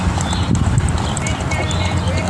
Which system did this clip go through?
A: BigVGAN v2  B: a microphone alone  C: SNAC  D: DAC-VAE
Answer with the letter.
B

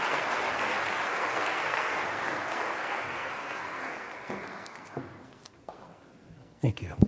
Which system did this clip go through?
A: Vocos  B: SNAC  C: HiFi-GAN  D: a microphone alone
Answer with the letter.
B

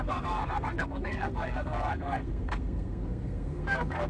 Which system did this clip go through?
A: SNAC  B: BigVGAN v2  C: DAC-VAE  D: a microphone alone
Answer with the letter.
A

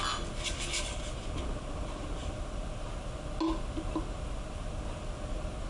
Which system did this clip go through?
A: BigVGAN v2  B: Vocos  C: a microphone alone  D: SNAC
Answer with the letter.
C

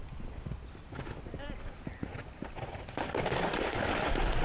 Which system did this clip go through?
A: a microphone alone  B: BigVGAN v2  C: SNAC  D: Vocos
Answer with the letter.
A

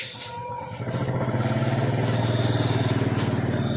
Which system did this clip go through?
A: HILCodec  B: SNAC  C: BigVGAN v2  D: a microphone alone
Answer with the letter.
D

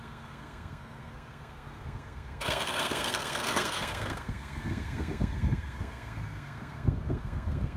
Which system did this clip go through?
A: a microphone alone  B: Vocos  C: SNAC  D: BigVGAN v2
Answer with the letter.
C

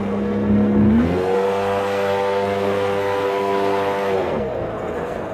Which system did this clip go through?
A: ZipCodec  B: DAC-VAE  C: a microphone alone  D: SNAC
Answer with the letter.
D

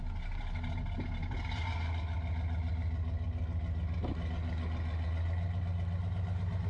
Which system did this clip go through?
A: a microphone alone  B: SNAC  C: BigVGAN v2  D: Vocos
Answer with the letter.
A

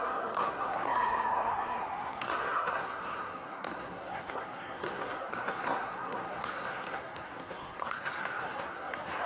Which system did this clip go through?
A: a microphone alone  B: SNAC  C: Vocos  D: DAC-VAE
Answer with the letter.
B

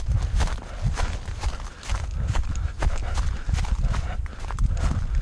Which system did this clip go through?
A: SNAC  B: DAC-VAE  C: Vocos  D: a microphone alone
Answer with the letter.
D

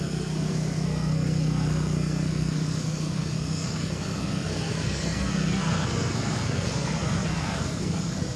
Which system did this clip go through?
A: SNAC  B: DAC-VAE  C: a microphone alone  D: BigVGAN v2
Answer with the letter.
A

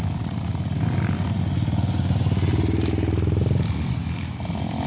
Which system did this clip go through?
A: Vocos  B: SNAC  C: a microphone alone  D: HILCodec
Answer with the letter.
C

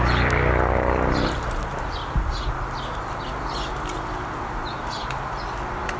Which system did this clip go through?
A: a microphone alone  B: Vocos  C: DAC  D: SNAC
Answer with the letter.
A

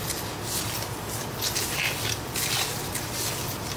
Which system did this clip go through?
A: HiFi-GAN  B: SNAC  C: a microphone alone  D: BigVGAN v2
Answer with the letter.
C